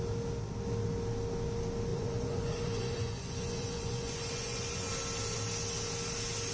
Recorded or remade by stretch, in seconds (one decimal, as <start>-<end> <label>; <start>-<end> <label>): 0.0-1.9 recorded; 1.9-4.9 remade; 4.9-6.5 recorded